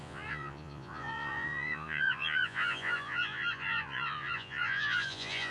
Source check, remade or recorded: remade